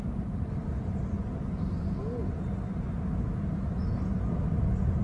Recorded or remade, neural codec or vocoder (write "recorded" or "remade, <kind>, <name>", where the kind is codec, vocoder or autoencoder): recorded